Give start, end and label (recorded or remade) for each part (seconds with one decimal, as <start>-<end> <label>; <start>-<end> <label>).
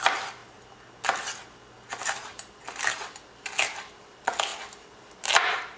0.0-5.8 recorded